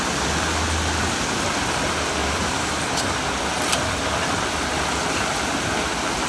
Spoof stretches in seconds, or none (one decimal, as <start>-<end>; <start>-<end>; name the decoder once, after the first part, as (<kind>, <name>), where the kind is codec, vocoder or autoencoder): 2.2-2.8 (vocoder, BigVGAN v2)